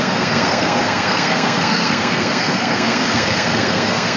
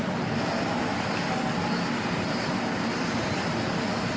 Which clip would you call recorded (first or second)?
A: second